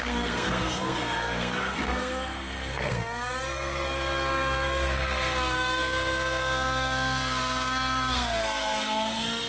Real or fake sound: fake